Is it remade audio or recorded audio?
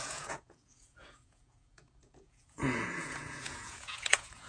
remade